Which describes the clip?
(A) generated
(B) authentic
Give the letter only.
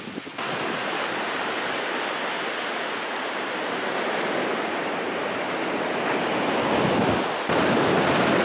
B